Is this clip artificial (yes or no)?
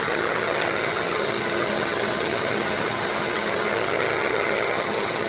yes